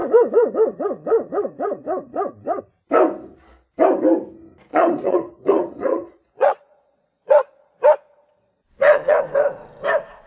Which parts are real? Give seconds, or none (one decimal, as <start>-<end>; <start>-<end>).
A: 2.6-4.7; 9.2-10.3